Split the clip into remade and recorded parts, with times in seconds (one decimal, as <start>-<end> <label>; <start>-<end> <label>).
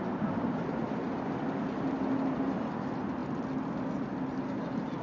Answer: 0.0-5.0 recorded